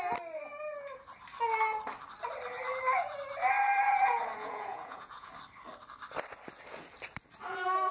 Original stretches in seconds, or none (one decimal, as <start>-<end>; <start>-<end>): 0.0-4.3; 5.3-7.9